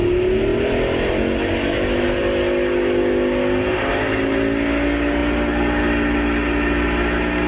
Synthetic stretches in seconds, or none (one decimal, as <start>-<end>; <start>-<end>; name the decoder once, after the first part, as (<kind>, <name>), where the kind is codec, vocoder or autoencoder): none